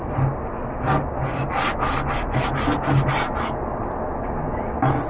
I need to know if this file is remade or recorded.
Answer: recorded